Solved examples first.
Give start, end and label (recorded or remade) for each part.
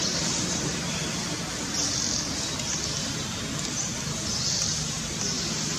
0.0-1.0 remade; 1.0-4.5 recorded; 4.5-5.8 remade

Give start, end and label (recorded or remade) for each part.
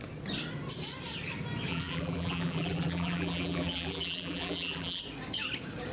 0.0-1.7 recorded; 1.7-5.0 remade; 5.0-5.9 recorded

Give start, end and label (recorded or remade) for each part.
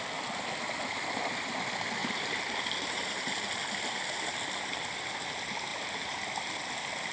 0.0-2.0 recorded; 2.0-3.4 remade; 3.4-5.7 recorded; 5.7-6.5 remade; 6.5-7.1 recorded